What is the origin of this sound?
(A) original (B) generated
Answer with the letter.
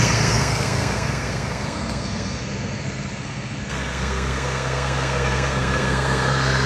B